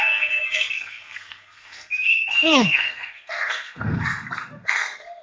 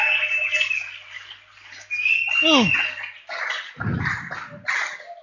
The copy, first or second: first